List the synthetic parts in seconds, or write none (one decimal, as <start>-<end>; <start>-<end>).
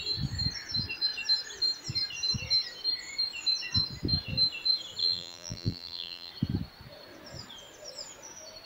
5.0-6.3